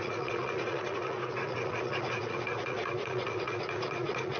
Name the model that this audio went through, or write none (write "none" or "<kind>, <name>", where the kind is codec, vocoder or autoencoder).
vocoder, Vocos